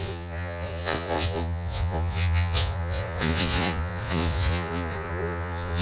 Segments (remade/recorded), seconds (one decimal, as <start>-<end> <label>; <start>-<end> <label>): 0.0-5.8 remade